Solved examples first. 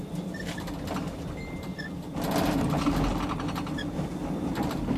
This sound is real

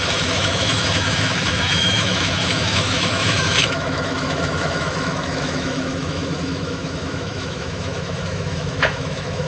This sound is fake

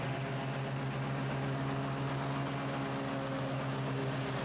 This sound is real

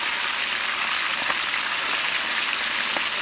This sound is real